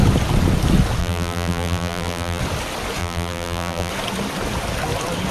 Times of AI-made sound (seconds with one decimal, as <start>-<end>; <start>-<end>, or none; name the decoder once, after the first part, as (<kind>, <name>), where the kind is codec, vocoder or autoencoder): 1.0-2.4 (vocoder, BigVGAN v2); 3.0-3.9